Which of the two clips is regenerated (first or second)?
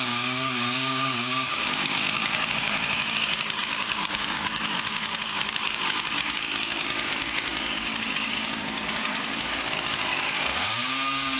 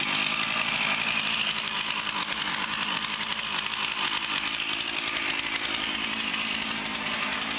first